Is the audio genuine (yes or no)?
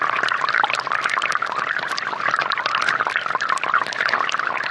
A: yes